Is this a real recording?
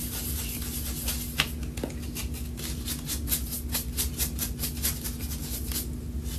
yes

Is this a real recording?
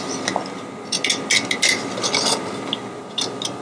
yes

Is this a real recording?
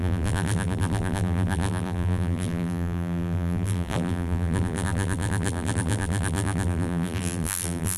no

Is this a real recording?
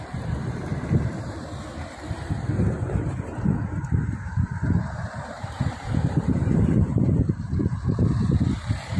no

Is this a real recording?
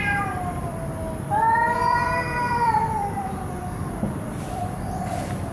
no